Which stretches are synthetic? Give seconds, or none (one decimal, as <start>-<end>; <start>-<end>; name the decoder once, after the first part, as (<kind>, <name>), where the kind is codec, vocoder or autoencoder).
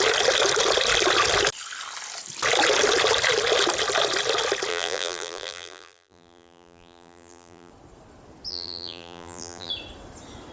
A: 4.7-7.7 (vocoder, BigVGAN v2); 8.5-9.7